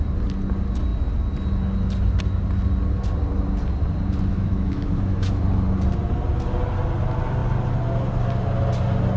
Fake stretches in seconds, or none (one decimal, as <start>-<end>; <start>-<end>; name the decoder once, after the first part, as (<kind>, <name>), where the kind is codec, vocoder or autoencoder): 4.3-5.4 (autoencoder, DAC-VAE)